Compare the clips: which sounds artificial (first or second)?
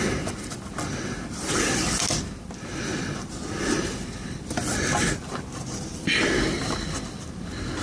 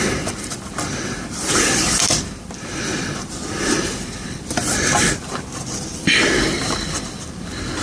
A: second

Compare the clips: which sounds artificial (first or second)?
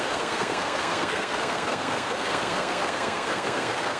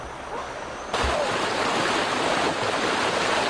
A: first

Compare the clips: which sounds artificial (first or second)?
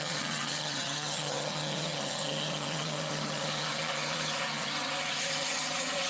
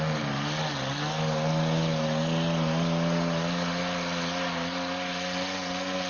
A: first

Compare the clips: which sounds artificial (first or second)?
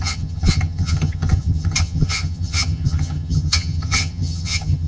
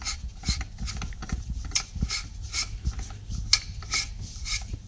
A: first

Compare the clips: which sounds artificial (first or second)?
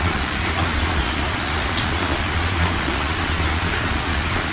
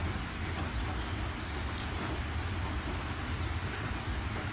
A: first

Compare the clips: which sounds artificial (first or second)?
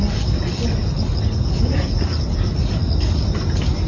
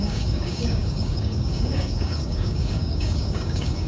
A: second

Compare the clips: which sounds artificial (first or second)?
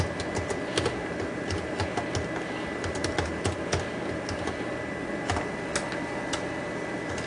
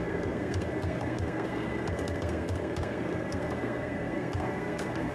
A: second